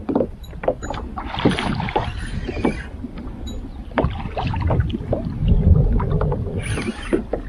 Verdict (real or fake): fake